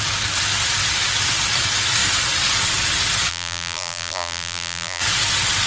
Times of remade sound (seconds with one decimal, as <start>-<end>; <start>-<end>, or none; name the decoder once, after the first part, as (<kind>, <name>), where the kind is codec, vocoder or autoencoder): 3.3-5.0 (vocoder, BigVGAN v2)